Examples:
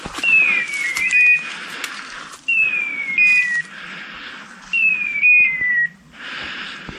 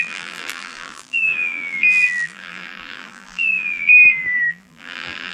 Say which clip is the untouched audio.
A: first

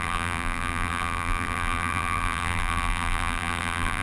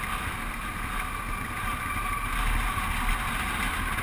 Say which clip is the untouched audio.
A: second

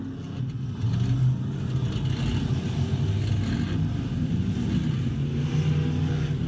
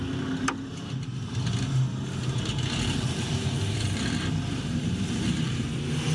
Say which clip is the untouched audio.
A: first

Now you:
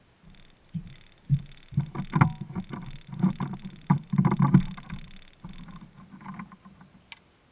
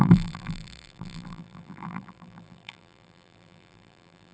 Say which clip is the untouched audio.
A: first